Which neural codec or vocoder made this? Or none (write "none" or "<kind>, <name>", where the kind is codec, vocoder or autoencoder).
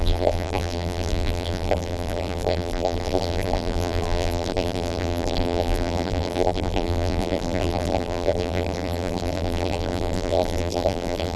vocoder, BigVGAN v2